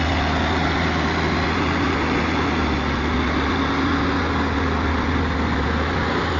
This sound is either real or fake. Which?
real